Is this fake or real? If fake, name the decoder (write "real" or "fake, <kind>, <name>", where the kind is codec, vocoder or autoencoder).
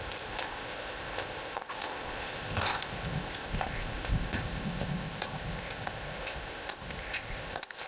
fake, codec, ZipCodec